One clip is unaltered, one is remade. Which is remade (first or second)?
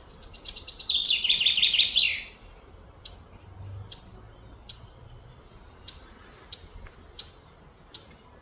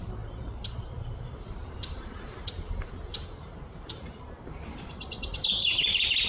second